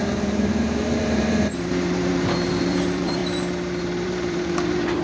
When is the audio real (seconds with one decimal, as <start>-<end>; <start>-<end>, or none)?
3.2-3.8